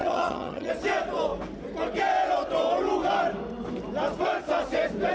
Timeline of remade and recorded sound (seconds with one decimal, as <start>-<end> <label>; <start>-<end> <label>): 0.0-0.7 remade; 0.7-5.1 recorded